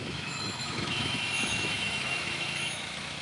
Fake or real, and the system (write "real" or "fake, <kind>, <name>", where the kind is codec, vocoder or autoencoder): fake, autoencoder, DAC-VAE